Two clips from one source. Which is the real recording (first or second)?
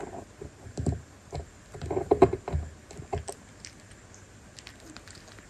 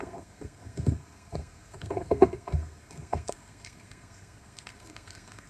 first